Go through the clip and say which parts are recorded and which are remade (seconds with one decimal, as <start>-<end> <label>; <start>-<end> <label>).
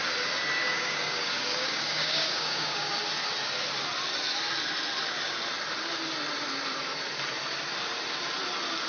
0.0-0.6 recorded; 0.6-2.9 remade; 2.9-8.9 recorded